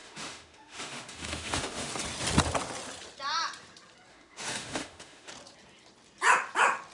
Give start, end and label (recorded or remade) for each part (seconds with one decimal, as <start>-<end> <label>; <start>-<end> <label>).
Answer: 0.0-1.9 remade; 1.9-4.1 recorded; 4.1-5.3 remade; 5.3-6.9 recorded